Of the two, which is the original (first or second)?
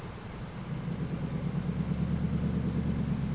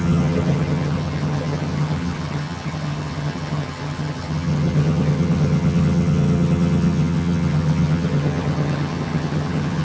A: first